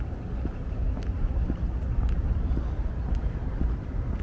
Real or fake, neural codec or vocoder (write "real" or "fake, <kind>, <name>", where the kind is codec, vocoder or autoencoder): real